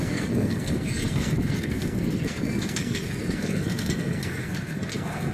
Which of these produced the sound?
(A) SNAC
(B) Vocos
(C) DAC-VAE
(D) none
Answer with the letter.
A